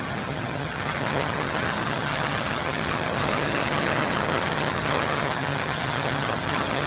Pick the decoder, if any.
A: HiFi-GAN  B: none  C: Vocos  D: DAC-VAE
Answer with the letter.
A